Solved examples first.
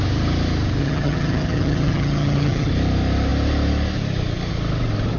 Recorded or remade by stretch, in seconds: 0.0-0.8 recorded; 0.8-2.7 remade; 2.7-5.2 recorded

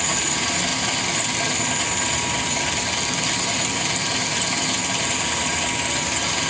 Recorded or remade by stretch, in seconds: 0.0-6.5 recorded

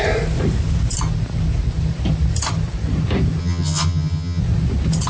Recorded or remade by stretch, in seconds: 0.0-3.4 recorded; 3.4-4.4 remade; 4.4-5.1 recorded

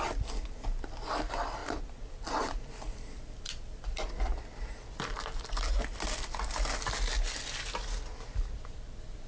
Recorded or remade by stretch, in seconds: 0.0-9.3 recorded

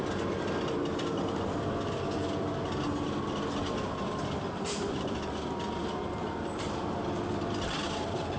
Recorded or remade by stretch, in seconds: 0.0-8.4 recorded